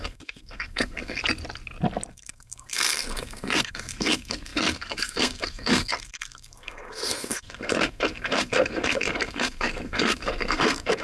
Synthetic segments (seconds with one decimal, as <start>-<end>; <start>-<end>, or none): 0.0-1.2; 2.1-11.0